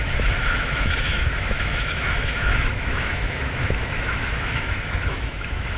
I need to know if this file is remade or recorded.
remade